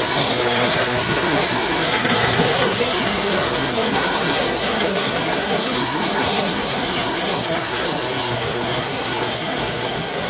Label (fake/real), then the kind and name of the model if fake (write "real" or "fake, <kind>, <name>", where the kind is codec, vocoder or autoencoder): fake, codec, SNAC